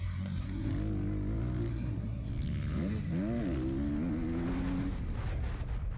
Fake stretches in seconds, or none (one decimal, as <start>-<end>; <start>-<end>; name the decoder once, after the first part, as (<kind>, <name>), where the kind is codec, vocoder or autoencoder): 0.0-0.7 (codec, SNAC); 1.7-2.3